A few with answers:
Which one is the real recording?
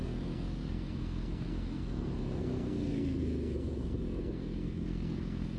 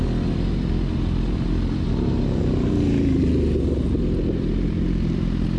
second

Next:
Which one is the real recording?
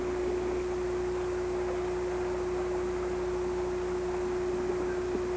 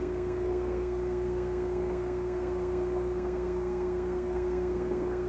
first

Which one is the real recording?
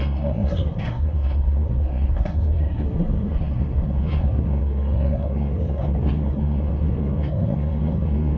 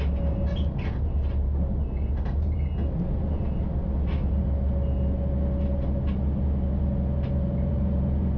second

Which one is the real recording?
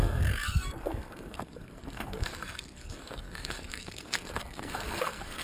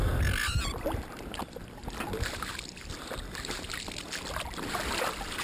second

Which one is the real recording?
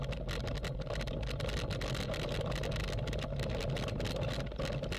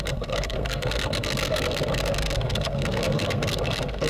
first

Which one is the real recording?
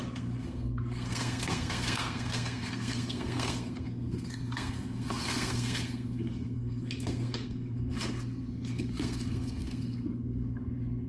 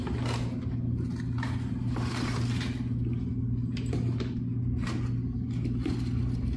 second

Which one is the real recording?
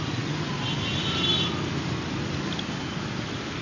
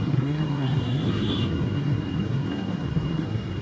first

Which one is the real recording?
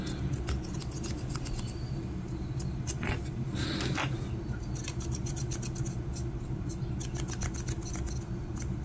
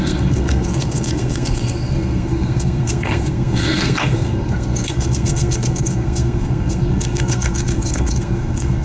first